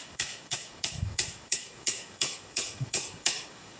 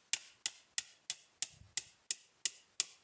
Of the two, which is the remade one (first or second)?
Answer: first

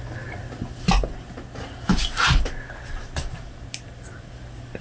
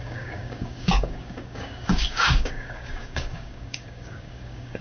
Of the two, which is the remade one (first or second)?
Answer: second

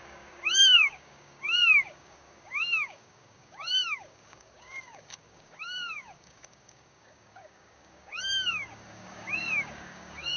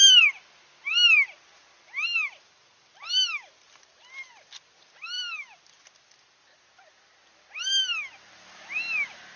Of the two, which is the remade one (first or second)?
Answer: first